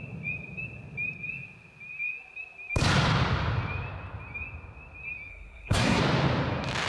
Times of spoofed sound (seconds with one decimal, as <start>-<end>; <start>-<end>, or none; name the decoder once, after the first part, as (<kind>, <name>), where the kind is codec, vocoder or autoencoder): 5.3-6.0 (codec, SNAC)